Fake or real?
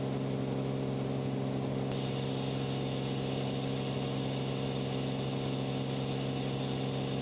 real